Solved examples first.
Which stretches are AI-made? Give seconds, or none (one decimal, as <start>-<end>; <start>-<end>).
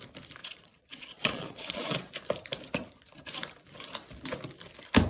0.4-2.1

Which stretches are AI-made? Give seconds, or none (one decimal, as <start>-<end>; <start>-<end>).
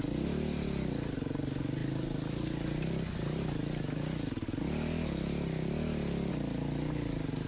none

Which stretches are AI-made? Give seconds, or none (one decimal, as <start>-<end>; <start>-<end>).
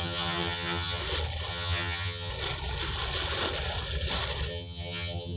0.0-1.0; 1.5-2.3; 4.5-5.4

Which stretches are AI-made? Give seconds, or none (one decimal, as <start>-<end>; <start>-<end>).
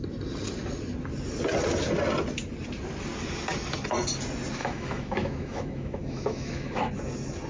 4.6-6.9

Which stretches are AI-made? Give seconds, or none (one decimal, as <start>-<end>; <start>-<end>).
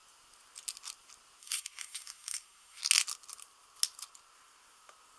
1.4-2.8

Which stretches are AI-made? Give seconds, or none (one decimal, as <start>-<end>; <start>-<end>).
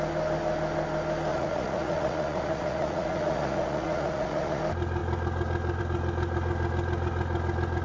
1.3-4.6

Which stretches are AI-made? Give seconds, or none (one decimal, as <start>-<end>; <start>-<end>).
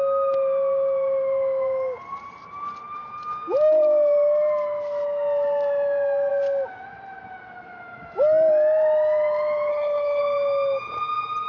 9.7-10.2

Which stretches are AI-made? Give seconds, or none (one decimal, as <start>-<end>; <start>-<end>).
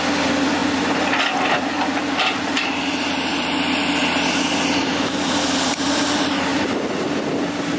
3.3-4.8; 6.5-7.2